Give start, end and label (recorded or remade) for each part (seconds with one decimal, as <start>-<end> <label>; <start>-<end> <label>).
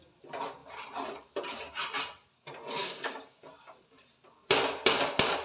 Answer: 0.0-2.8 recorded; 2.8-3.4 remade; 3.4-5.4 recorded